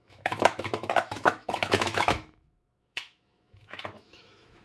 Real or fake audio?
fake